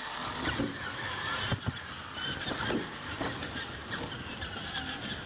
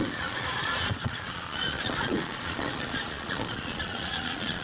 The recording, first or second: first